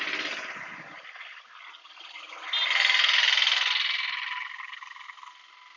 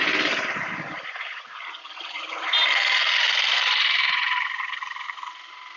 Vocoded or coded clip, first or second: second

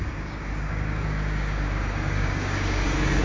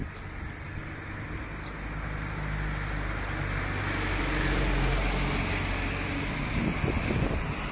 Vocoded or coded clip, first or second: first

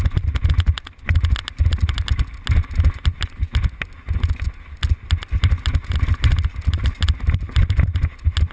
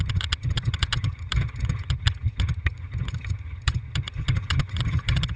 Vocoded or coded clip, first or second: second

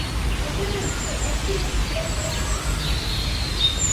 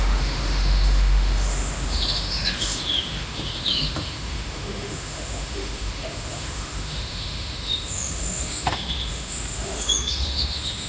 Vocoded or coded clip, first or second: second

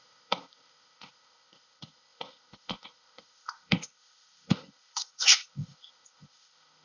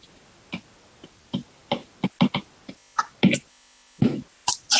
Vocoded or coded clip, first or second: first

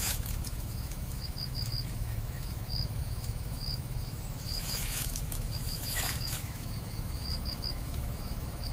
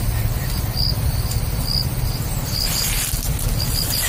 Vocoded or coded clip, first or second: first